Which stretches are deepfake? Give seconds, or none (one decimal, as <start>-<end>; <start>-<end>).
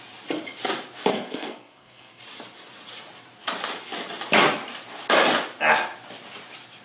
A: 1.1-2.2